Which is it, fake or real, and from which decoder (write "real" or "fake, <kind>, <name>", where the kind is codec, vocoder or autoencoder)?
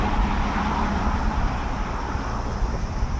real